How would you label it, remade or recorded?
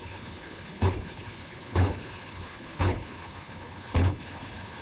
remade